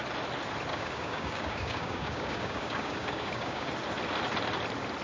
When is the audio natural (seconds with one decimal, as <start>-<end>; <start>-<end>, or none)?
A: 0.0-0.7; 3.7-5.0